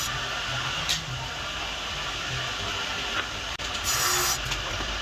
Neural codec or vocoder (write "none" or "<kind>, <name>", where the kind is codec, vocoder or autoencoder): none